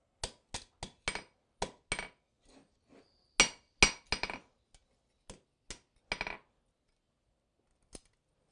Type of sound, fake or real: real